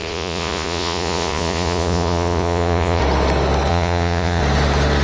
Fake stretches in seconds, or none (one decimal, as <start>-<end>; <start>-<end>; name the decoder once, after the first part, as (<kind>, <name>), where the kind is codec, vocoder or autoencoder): 0.0-3.0 (vocoder, Vocos); 3.7-4.4